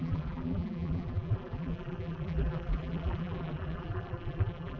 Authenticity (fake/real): fake